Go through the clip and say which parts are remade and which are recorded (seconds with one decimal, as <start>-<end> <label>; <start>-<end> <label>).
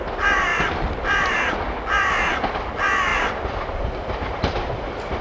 0.0-0.5 recorded; 0.5-1.6 remade; 1.6-3.1 recorded; 3.1-5.2 remade